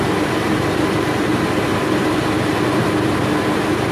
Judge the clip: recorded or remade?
recorded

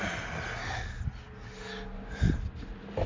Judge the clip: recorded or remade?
recorded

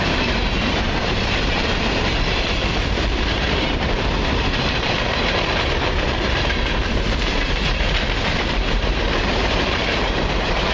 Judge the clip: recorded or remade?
remade